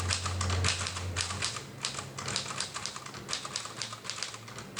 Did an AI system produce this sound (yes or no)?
no